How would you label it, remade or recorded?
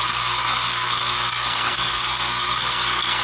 remade